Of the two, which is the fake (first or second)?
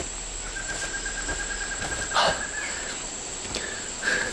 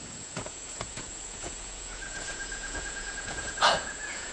second